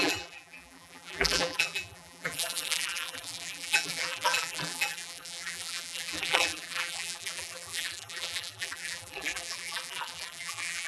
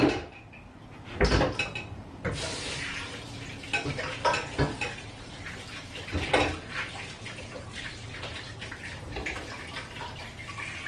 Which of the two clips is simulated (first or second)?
first